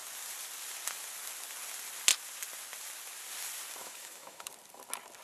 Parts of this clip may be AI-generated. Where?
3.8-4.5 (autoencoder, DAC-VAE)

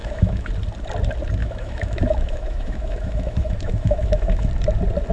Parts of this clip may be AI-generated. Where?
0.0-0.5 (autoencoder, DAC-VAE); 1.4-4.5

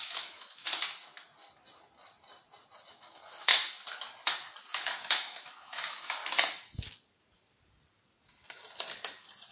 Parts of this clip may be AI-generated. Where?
0.0-0.7 (autoencoder, DAC-VAE); 2.9-3.5; 4.7-6.2

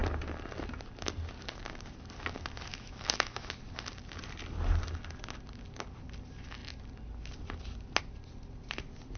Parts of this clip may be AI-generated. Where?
2.7-3.5 (autoencoder, DAC-VAE)

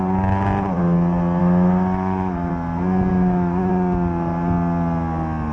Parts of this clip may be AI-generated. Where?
1.4-2.5 (autoencoder, DAC-VAE); 3.1-3.7

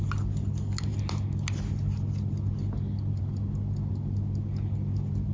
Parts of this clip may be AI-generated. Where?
none